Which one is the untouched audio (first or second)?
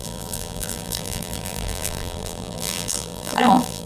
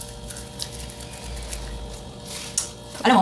second